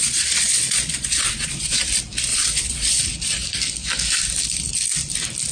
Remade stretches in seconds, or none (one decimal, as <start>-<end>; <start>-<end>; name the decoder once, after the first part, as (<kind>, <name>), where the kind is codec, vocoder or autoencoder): 0.0-1.8 (vocoder, Vocos); 2.3-3.0